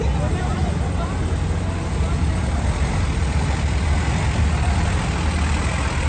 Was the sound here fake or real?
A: real